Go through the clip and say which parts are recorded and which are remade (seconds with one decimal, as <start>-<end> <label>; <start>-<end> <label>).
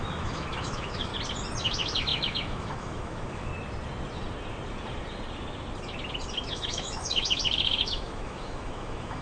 0.0-1.1 remade; 1.1-1.6 recorded; 1.6-3.5 remade; 3.5-6.5 recorded; 6.5-9.2 remade